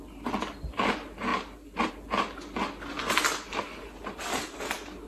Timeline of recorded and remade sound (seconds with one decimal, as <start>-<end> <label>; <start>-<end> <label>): 0.0-5.1 recorded